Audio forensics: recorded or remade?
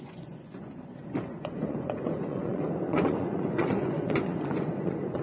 remade